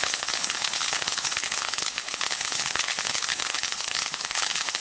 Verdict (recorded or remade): remade